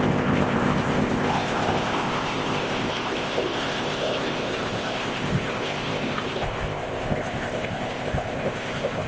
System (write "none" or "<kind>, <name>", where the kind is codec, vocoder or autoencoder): codec, ZipCodec